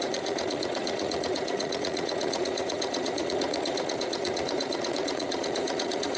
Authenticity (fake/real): fake